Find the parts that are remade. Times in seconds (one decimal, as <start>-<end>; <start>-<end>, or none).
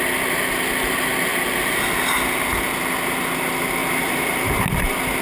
3.8-4.6